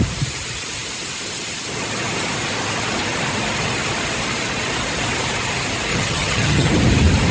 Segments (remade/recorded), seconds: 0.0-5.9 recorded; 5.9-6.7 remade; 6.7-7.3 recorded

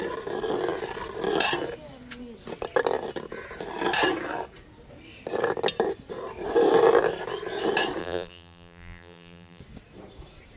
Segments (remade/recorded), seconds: 0.0-8.0 recorded; 8.0-9.6 remade; 9.6-10.6 recorded

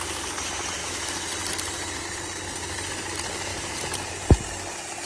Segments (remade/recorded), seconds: 0.0-0.8 recorded; 0.8-1.3 remade; 1.3-5.1 recorded

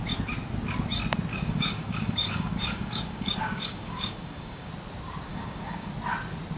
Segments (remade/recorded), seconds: 0.0-1.3 recorded; 1.3-4.7 remade; 4.7-5.3 recorded; 5.3-5.9 remade; 5.9-6.6 recorded

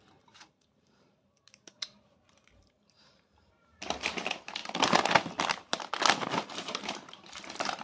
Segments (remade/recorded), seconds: 0.0-4.6 remade; 4.6-6.5 recorded; 6.5-7.8 remade

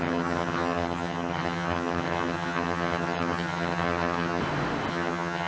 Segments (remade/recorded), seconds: 0.0-4.4 remade; 4.4-4.9 recorded; 4.9-5.5 remade

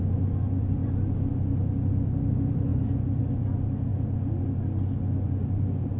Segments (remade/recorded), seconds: 0.0-0.8 remade; 0.8-2.3 recorded; 2.3-6.0 remade